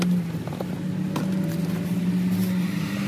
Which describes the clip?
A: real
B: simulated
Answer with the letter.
A